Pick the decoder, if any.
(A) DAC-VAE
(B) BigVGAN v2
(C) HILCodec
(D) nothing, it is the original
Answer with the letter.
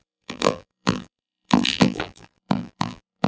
B